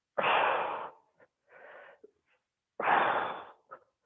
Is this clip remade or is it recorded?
recorded